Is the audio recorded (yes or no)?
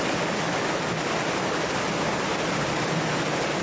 yes